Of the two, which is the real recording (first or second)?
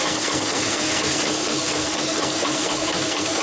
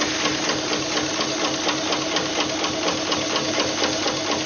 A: second